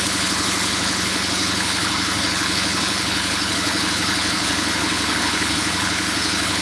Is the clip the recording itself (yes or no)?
no